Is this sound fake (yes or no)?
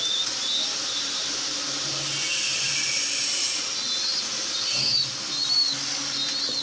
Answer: no